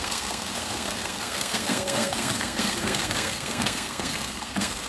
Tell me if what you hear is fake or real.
fake